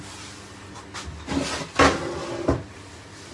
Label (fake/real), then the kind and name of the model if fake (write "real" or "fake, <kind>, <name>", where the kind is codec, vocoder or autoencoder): real